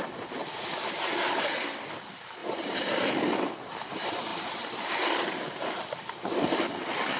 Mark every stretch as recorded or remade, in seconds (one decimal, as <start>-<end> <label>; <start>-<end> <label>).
0.0-2.4 recorded; 2.4-3.1 remade; 3.1-4.3 recorded; 4.3-6.6 remade; 6.6-7.2 recorded

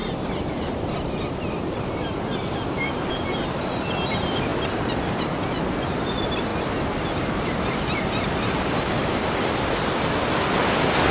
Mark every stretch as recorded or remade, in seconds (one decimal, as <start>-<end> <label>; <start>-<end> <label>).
0.0-11.1 recorded

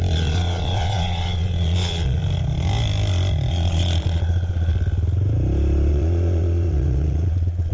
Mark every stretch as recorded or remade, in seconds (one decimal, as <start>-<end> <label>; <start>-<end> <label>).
0.0-2.2 remade; 2.2-3.5 recorded; 3.5-4.7 remade; 4.7-5.9 recorded; 5.9-7.7 remade